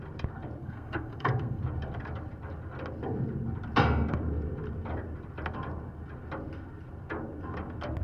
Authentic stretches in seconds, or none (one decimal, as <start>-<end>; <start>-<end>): 0.0-0.6; 1.6-8.0